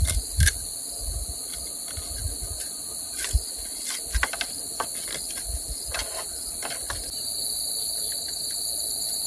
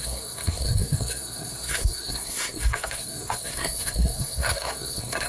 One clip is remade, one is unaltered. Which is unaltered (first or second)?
first